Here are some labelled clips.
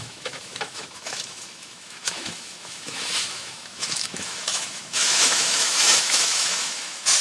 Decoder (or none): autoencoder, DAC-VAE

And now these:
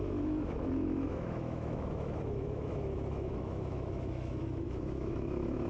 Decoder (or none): autoencoder, DAC-VAE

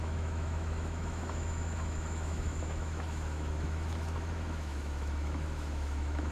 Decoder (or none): autoencoder, DAC-VAE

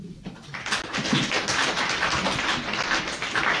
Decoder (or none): none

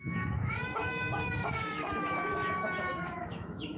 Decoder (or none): autoencoder, DAC-VAE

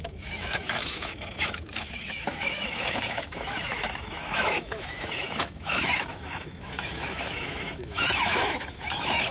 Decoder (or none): autoencoder, DAC-VAE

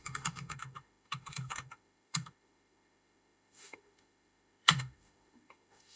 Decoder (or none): autoencoder, DAC-VAE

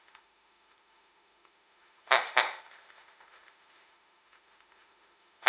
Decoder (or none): autoencoder, DAC-VAE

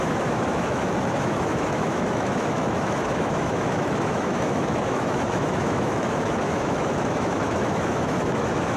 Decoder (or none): autoencoder, DAC-VAE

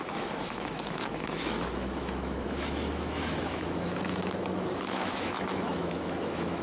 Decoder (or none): autoencoder, DAC-VAE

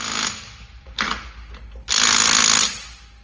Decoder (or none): none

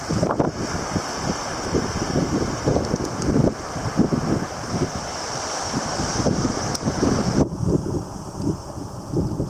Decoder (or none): none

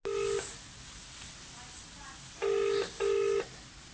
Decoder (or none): none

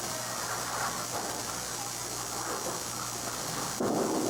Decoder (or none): none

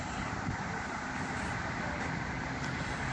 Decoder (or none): none